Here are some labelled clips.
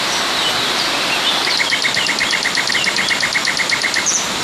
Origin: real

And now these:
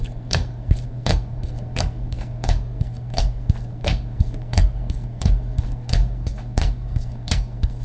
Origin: fake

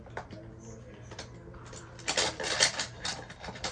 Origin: real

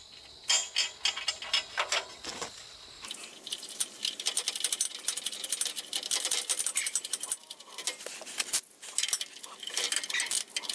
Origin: real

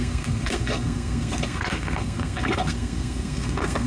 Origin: fake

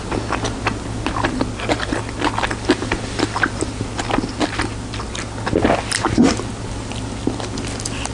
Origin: real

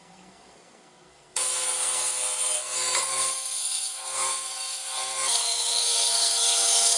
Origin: fake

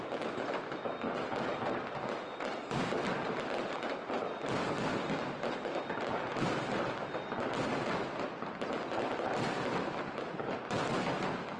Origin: real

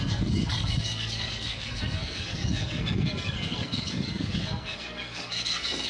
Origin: fake